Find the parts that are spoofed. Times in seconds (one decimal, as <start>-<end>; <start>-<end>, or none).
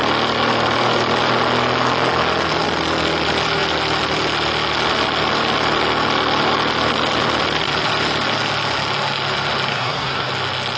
9.7-10.3